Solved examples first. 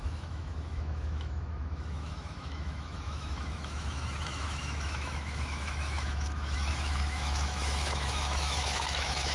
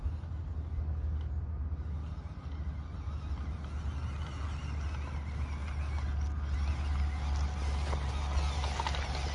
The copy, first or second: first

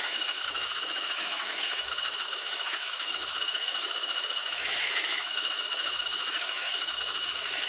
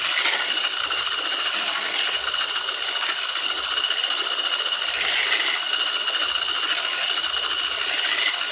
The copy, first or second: first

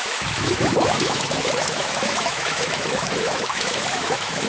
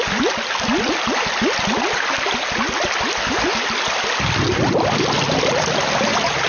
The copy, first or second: first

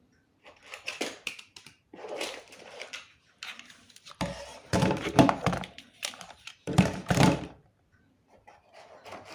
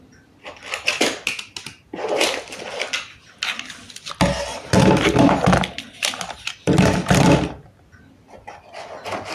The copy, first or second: first